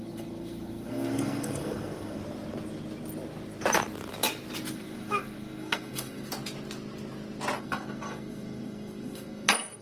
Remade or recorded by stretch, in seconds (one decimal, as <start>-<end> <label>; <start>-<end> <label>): 0.0-2.2 remade; 2.2-4.7 recorded; 4.7-6.3 remade; 6.3-7.6 recorded; 7.6-9.8 remade